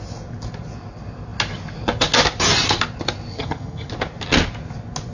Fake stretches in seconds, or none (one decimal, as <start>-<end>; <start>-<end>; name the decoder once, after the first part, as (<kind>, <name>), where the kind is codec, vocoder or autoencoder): 3.3-3.9 (vocoder, HiFi-GAN)